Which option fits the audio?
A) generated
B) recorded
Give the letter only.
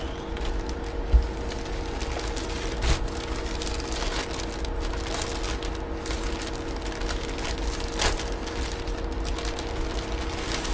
B